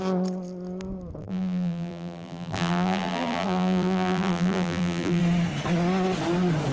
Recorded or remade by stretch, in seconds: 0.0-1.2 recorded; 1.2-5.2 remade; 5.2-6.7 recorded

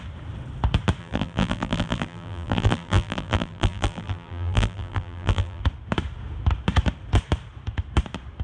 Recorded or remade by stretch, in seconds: 0.0-1.0 recorded; 1.0-5.6 remade; 5.6-8.4 recorded

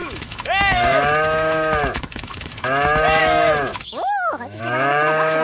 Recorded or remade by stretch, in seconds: 0.0-5.4 remade

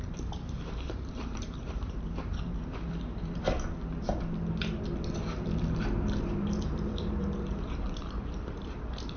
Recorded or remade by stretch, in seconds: 0.0-3.5 remade; 3.5-6.2 recorded; 6.2-9.2 remade